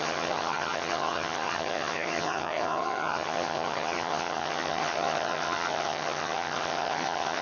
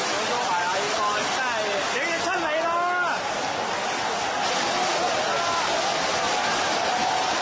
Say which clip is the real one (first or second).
second